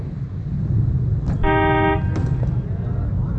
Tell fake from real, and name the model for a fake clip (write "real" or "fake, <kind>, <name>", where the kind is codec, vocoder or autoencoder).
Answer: real